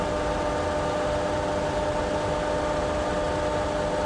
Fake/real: real